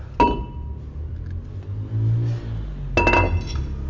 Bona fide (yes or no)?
yes